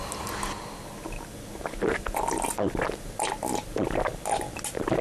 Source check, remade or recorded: recorded